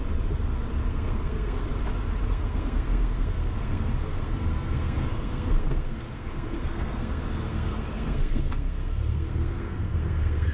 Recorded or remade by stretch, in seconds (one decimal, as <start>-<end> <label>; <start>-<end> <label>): 0.0-0.9 recorded; 0.9-1.7 remade; 1.7-2.3 recorded; 2.3-10.5 remade